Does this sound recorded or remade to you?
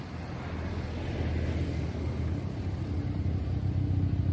recorded